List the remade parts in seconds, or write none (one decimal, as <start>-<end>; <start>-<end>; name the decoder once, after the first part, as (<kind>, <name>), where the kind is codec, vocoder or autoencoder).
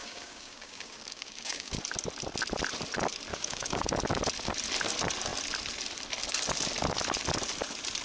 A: 0.0-1.7 (codec, DAC); 3.3-3.9